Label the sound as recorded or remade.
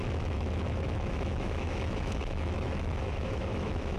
remade